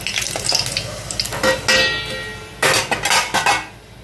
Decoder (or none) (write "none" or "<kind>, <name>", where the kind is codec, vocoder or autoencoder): none